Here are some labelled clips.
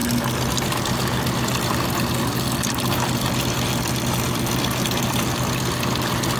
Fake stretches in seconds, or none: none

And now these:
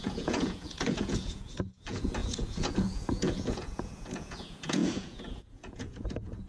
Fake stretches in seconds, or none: 0.0-6.5 (vocoder, Vocos)

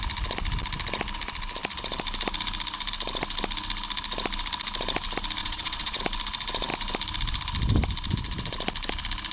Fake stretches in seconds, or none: 5.4-6.0 (vocoder, WaveNeXt)

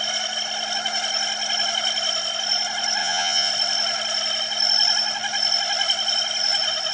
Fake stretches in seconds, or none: 3.0-3.5 (vocoder, Vocos)